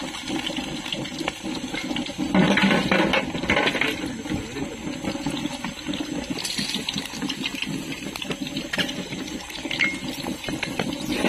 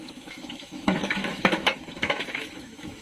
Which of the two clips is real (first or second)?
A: first